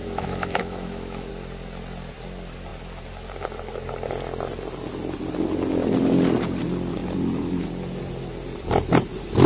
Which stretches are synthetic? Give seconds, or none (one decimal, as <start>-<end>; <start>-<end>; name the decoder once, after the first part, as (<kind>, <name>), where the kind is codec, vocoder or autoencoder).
0.0-1.3 (autoencoder, DAC-VAE)